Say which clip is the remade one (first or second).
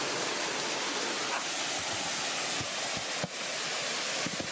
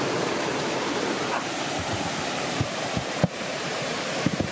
second